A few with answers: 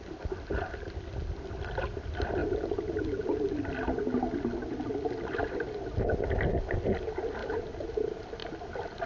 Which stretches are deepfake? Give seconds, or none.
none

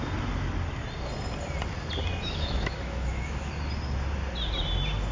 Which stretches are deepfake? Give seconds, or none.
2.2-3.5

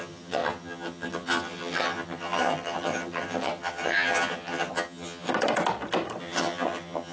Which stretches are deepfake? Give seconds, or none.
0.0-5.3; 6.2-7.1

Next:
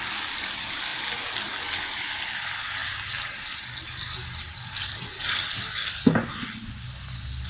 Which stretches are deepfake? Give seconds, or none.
none